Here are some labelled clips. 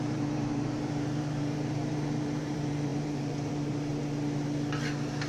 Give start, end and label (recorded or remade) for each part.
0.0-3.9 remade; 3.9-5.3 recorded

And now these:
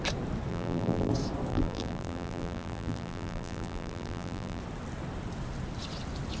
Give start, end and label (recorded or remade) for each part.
0.0-0.5 recorded; 0.5-1.1 remade; 1.1-1.5 recorded; 1.5-4.6 remade; 4.6-6.4 recorded

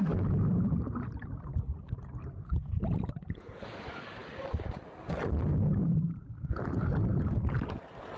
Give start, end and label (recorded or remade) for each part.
0.0-4.2 recorded; 4.2-6.8 remade; 6.8-8.2 recorded

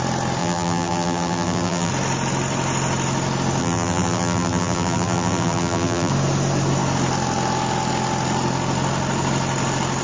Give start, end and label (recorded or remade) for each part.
0.0-0.4 recorded; 0.4-1.9 remade; 1.9-3.6 recorded; 3.6-6.1 remade; 6.1-10.0 recorded

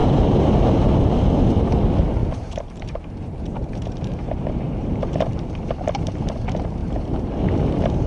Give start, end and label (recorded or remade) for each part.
0.0-0.7 remade; 0.7-2.2 recorded; 2.2-5.4 remade; 5.4-6.8 recorded; 6.8-7.5 remade; 7.5-8.1 recorded

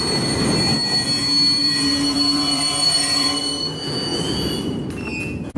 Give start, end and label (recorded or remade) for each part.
0.0-1.6 recorded; 1.6-3.4 remade; 3.4-5.6 recorded

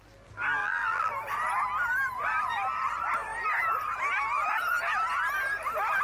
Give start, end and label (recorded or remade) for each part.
0.0-0.6 recorded; 0.6-1.1 remade; 1.1-6.0 recorded

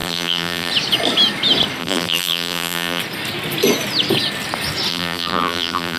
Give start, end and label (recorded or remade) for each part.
0.0-0.7 remade; 0.7-1.8 recorded; 1.8-3.0 remade; 3.0-4.9 recorded; 4.9-6.0 remade